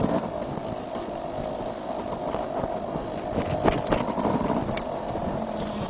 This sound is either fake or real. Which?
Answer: real